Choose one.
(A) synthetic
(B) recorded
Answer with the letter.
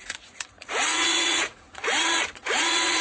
A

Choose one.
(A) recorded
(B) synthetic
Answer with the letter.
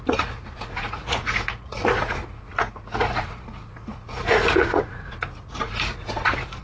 B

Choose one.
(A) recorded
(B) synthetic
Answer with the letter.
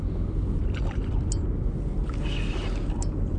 A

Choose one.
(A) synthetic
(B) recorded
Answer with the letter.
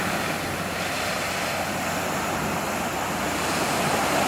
B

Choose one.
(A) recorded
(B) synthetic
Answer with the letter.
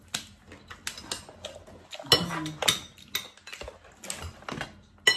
A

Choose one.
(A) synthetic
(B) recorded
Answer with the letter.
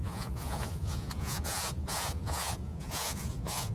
A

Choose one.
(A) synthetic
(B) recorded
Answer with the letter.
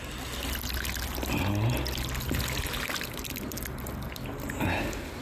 B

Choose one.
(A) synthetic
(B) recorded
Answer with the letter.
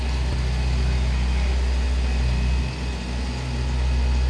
B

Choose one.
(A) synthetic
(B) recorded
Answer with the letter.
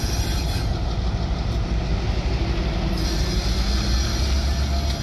B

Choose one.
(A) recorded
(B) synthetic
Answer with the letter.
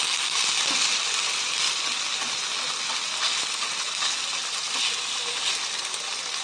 A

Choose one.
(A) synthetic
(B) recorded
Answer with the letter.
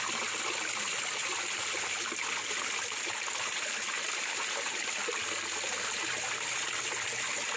B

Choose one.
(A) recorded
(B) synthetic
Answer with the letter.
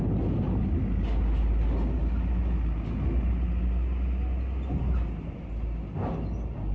A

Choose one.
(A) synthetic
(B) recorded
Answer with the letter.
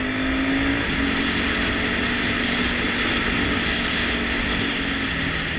B